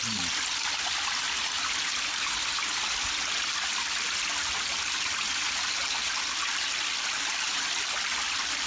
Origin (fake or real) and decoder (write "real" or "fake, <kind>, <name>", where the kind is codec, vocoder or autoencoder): real